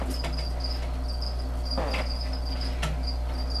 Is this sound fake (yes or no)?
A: no